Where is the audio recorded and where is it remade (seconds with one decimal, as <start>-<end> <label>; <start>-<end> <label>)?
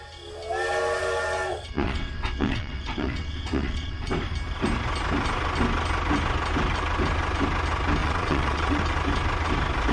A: 0.0-1.5 recorded; 1.5-4.1 remade; 4.1-8.0 recorded; 8.0-8.8 remade; 8.8-9.9 recorded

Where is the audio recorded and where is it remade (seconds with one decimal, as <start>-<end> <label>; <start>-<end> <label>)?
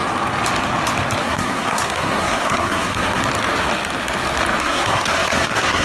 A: 0.0-1.2 recorded; 1.2-3.2 remade; 3.2-4.6 recorded; 4.6-5.8 remade